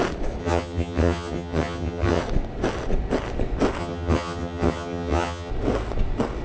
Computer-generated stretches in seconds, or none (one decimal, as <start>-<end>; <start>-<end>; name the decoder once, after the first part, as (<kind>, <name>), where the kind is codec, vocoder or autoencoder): 0.4-2.2 (vocoder, HiFi-GAN); 3.8-5.5